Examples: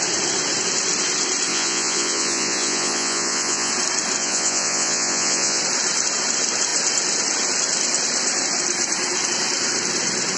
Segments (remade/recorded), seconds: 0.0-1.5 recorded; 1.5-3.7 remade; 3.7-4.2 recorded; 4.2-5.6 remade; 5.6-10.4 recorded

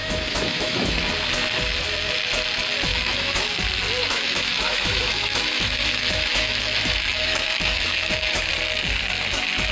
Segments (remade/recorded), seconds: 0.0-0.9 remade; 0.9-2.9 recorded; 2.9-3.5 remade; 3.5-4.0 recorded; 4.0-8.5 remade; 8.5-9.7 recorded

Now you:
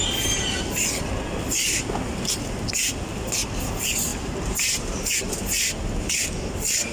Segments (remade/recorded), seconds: 0.0-6.9 recorded

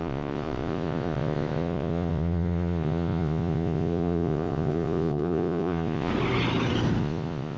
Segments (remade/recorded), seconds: 0.0-6.1 remade; 6.1-7.0 recorded; 7.0-7.6 remade

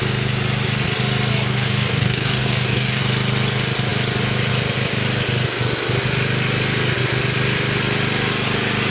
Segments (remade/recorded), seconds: 0.0-1.3 recorded; 1.3-3.0 remade; 3.0-8.9 recorded